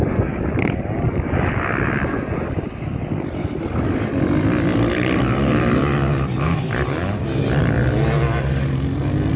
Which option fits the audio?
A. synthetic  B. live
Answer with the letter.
B